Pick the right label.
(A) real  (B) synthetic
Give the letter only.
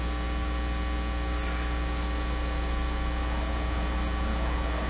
A